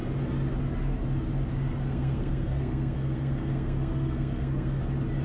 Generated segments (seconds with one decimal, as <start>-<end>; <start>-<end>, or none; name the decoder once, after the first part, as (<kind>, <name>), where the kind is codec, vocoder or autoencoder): 1.7-4.8 (codec, SNAC)